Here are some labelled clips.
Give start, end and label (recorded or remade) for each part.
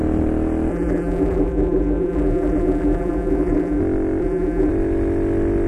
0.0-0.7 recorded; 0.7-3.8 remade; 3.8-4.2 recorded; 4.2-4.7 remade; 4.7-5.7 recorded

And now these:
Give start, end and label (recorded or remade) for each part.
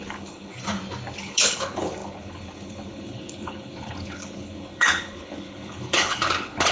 0.0-0.5 remade; 0.5-1.2 recorded; 1.2-6.7 remade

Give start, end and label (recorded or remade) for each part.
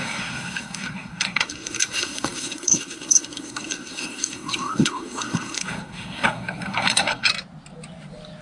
0.0-7.3 remade; 7.3-8.4 recorded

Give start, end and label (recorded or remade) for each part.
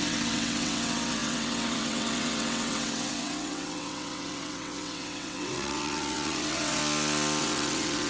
0.0-6.8 remade; 6.8-7.4 recorded; 7.4-8.1 remade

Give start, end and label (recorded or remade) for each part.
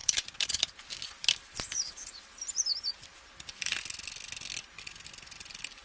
0.0-0.6 remade; 0.6-2.7 recorded; 2.7-3.3 remade; 3.3-5.8 recorded